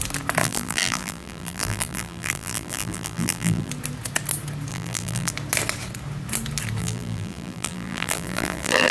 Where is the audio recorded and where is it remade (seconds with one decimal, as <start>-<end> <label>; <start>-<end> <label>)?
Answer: 0.0-0.4 recorded; 0.4-3.7 remade; 3.7-4.7 recorded; 4.7-5.3 remade; 5.3-6.8 recorded; 6.8-8.9 remade